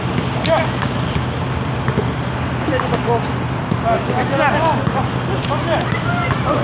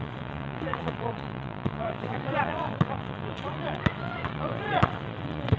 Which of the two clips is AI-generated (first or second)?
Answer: second